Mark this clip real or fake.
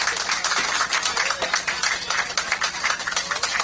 real